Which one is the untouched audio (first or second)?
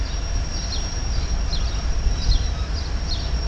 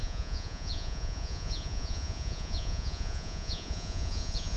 first